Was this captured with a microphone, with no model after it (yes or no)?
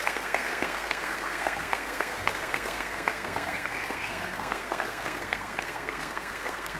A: no